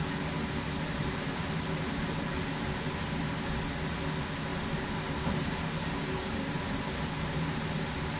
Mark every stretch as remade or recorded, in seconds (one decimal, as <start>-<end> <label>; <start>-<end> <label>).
0.0-1.0 recorded; 1.0-3.2 remade; 3.2-4.5 recorded; 4.5-7.4 remade; 7.4-8.2 recorded